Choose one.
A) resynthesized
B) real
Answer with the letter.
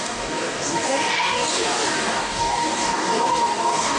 A